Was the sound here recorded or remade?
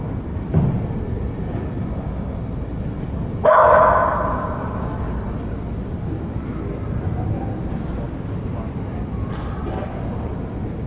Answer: recorded